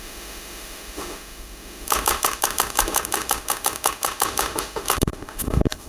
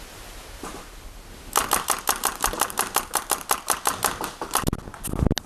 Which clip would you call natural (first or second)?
second